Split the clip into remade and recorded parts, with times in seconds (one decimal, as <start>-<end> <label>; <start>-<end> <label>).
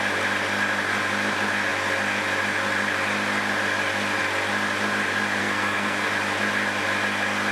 0.0-5.4 recorded; 5.4-6.1 remade; 6.1-7.5 recorded